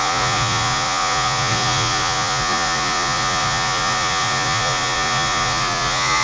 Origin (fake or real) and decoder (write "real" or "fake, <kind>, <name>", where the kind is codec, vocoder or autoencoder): fake, vocoder, Vocos